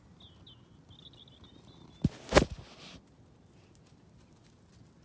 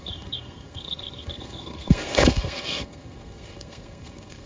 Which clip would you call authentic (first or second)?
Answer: first